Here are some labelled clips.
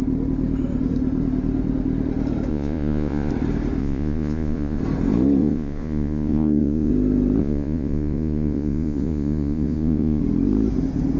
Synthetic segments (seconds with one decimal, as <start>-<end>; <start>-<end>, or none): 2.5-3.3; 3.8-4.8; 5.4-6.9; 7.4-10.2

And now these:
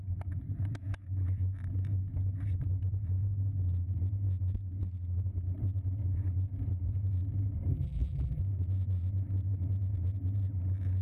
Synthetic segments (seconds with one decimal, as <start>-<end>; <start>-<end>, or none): 7.7-8.4

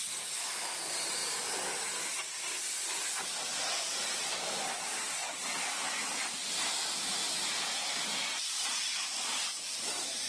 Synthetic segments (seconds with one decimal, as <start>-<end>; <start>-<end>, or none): none

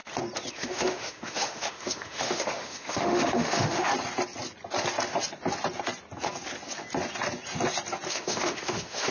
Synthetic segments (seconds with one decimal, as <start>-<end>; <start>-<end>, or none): 0.5-3.9; 8.1-9.1